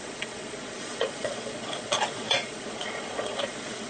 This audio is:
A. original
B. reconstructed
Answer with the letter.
B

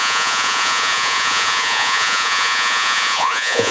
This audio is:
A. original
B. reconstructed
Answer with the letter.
B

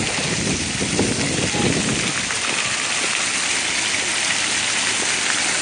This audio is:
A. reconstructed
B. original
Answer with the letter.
B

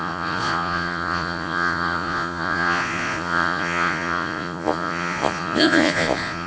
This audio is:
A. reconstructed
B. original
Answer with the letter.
A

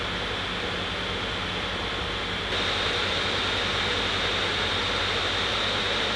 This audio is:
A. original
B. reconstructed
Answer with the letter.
A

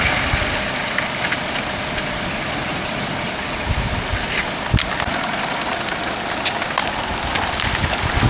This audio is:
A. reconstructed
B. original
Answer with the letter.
B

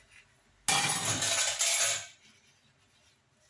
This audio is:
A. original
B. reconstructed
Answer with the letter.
A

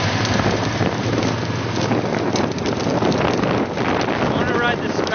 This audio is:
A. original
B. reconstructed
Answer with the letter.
A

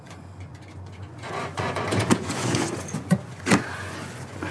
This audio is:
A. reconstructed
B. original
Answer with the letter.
A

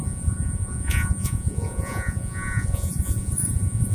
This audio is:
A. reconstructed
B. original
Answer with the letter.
A